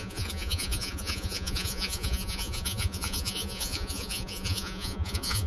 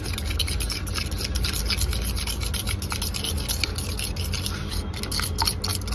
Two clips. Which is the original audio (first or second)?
second